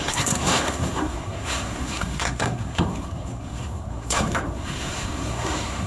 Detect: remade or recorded remade